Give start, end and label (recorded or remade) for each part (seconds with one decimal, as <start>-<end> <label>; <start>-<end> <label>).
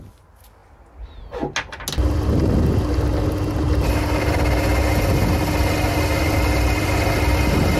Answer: 0.0-7.8 recorded